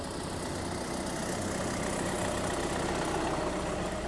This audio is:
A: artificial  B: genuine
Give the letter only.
B